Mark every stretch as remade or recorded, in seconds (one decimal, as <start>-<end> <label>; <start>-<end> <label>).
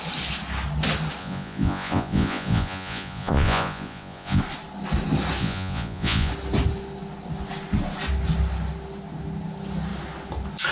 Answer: 0.0-1.2 recorded; 1.2-4.4 remade; 4.4-5.4 recorded; 5.4-6.3 remade; 6.3-10.7 recorded